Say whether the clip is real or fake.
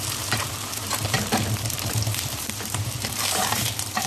fake